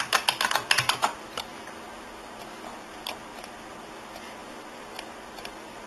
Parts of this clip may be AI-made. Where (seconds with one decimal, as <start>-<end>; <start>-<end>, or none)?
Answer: none